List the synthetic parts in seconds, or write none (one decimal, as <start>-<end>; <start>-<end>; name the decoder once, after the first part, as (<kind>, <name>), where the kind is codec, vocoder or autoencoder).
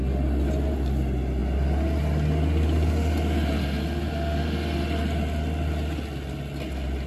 none